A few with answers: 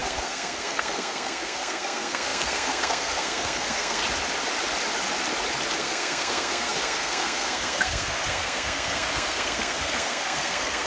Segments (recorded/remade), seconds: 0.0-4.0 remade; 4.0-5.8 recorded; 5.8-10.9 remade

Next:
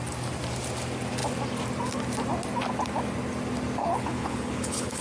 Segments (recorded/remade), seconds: 0.0-3.8 recorded; 3.8-5.0 remade

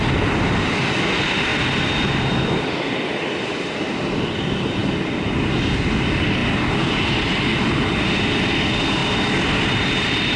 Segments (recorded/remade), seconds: 0.0-1.5 recorded; 1.5-4.2 remade; 4.2-6.4 recorded; 6.4-7.5 remade; 7.5-10.4 recorded

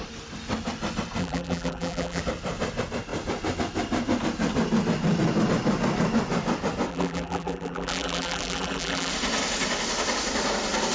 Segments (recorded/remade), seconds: 0.0-1.2 recorded; 1.2-2.2 remade; 2.2-6.9 recorded; 6.9-9.1 remade; 9.1-10.9 recorded

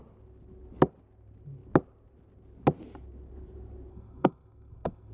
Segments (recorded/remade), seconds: 0.0-3.9 recorded; 3.9-5.1 remade

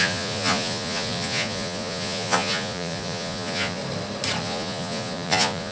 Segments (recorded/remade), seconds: 0.0-3.8 remade; 3.8-4.4 recorded; 4.4-5.7 remade

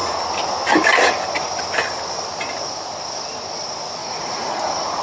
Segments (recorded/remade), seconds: 0.0-4.0 recorded; 4.0-5.0 remade